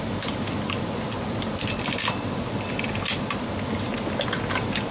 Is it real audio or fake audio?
real